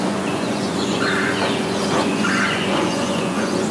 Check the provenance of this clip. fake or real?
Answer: fake